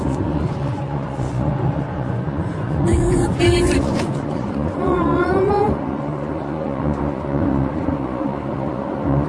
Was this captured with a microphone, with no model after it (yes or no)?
no